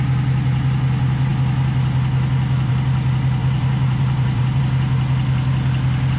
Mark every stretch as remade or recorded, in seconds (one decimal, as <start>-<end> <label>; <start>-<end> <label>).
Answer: 0.0-3.4 recorded; 3.4-4.6 remade; 4.6-6.2 recorded